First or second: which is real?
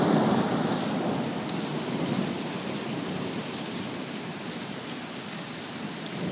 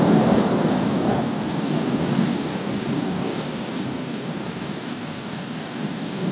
first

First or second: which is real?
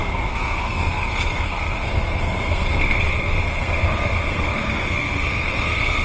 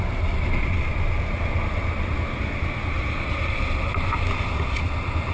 second